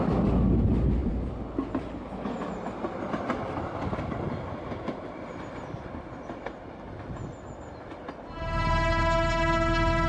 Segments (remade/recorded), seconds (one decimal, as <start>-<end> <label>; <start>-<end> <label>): 0.0-10.1 recorded